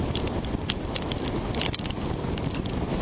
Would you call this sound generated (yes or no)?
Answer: no